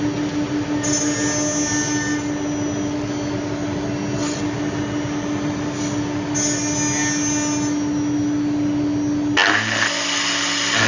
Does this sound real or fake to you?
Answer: real